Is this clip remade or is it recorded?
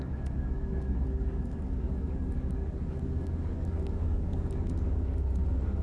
remade